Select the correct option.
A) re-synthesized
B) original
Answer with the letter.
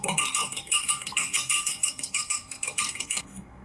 A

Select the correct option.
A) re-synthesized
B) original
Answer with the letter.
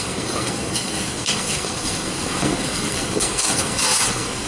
A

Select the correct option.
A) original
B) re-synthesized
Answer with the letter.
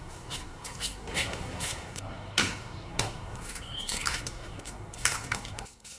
B